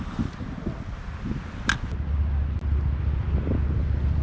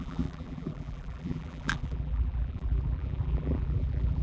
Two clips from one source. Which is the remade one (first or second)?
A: second